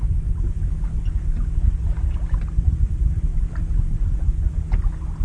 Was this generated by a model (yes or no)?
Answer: no